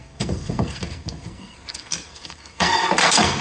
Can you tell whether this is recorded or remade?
remade